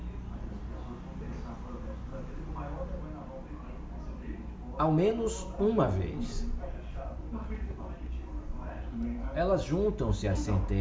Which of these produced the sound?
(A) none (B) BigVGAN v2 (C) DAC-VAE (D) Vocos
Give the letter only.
A